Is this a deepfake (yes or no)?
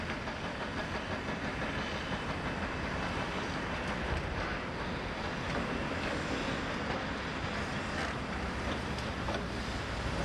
no